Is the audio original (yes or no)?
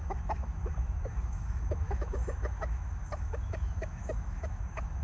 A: no